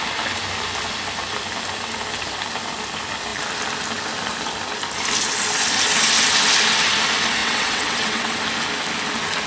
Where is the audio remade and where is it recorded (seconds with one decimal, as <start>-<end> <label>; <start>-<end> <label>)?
0.0-7.4 recorded; 7.4-8.4 remade; 8.4-9.5 recorded